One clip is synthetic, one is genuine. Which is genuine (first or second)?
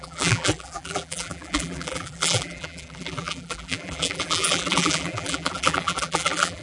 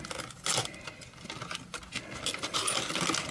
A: second